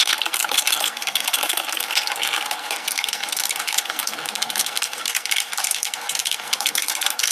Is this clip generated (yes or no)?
yes